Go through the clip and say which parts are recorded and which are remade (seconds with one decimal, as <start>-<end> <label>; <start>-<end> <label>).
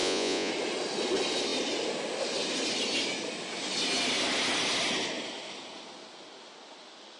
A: 0.0-0.5 remade; 0.5-7.2 recorded